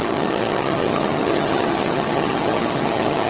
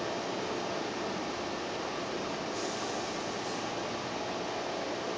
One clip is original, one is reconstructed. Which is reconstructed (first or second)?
first